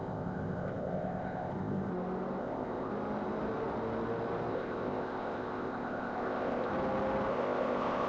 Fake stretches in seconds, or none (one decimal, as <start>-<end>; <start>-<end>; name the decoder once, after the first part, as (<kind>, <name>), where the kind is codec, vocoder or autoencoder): 0.0-1.9 (codec, ZipCodec); 2.4-2.9; 4.5-6.7; 7.3-8.1